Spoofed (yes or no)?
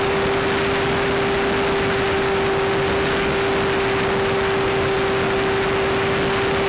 no